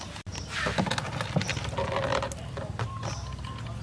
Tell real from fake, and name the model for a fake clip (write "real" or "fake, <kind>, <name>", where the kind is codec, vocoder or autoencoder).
real